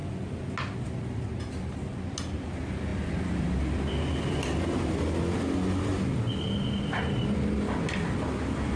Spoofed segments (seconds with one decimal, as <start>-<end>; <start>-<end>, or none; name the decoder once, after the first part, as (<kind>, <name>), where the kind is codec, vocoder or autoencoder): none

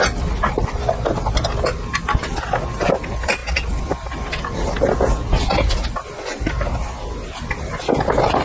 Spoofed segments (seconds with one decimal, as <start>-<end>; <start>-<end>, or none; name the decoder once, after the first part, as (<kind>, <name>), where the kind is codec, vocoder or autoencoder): none

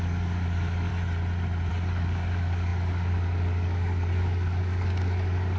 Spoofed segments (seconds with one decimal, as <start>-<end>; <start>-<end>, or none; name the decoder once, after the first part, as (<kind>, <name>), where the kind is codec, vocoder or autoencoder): 0.0-0.9 (codec, DAC); 1.7-5.6

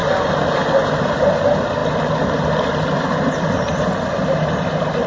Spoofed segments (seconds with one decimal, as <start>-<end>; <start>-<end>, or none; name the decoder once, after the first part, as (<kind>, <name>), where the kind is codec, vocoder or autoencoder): none

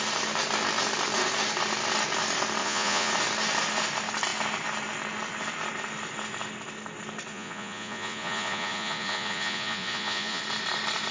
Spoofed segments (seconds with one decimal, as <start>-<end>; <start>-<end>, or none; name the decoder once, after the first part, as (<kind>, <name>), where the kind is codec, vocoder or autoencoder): 2.6-3.1 (vocoder, Vocos); 7.3-10.4

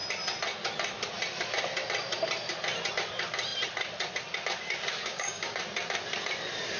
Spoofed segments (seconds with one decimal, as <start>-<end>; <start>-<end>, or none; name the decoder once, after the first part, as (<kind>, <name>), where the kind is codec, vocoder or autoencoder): 5.0-5.6 (codec, DAC)

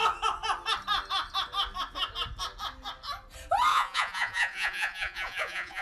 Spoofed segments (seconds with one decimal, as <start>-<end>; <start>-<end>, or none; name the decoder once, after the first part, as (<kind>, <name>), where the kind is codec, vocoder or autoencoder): 3.7-5.8 (vocoder, Vocos)